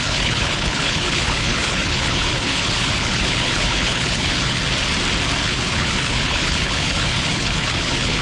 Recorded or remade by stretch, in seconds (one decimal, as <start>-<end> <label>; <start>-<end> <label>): 0.0-4.6 remade; 4.6-5.4 recorded; 5.4-8.2 remade